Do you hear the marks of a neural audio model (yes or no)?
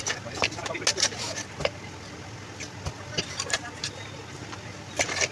no